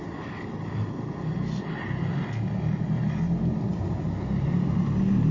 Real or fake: real